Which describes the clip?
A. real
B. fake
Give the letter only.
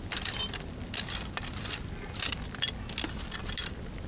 A